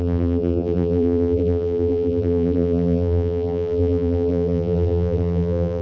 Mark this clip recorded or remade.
remade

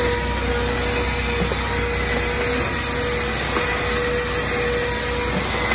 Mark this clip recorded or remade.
recorded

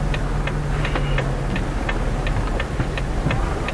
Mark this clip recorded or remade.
recorded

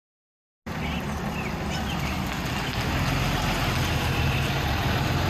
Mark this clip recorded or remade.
recorded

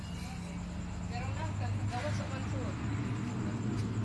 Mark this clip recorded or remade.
recorded